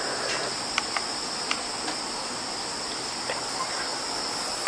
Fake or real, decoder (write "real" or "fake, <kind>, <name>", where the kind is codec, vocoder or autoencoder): real